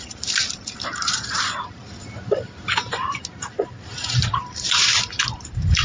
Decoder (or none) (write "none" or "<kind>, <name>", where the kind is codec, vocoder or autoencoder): vocoder, BigVGAN v2